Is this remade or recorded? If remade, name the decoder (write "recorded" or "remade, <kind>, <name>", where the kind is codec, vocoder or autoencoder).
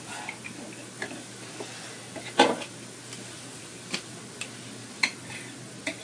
recorded